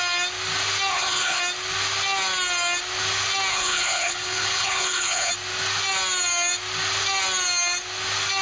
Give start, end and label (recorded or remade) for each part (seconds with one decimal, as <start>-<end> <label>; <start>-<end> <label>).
0.0-0.9 recorded; 0.9-1.4 remade; 1.4-3.5 recorded; 3.5-5.3 remade; 5.3-8.4 recorded